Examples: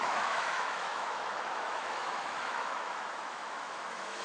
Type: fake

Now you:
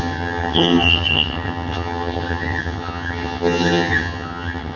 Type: fake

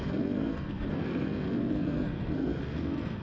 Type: fake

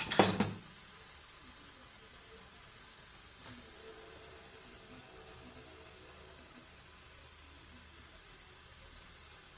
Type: real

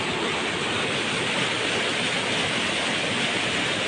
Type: real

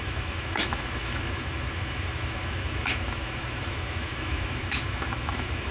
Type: fake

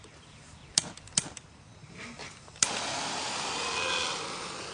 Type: fake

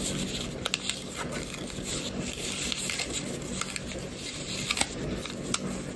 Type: real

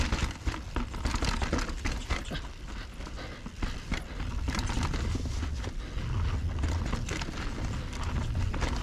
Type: real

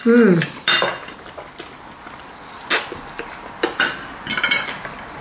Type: real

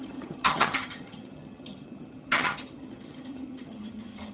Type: fake